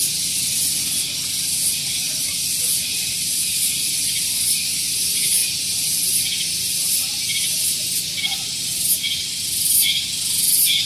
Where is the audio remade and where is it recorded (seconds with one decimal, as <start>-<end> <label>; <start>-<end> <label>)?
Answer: 0.0-2.2 recorded; 2.2-3.9 remade; 3.9-10.9 recorded